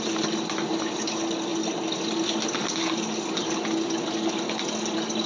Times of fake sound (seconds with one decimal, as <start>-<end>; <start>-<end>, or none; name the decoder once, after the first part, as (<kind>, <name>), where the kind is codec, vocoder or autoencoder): none